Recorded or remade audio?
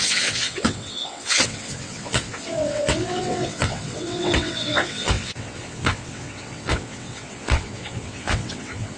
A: remade